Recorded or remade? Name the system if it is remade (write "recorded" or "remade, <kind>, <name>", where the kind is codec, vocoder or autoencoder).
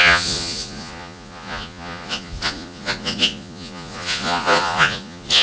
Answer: remade, vocoder, Vocos